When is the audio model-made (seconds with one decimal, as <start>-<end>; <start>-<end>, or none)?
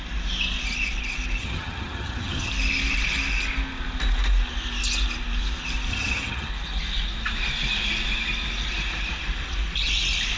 1.4-2.5; 5.9-6.5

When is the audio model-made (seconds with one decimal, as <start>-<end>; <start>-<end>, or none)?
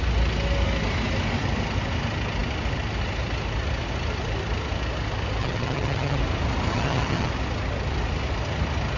5.4-6.2; 6.7-7.3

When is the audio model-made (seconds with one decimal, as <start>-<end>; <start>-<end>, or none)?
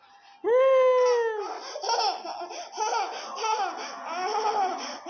none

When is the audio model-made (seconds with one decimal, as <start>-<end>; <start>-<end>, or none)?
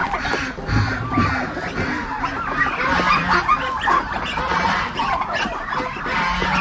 none